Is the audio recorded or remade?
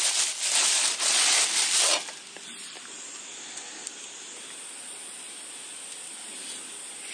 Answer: recorded